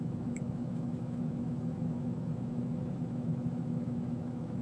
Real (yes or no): no